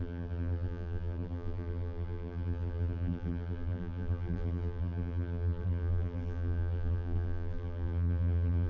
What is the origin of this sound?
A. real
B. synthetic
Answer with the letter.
B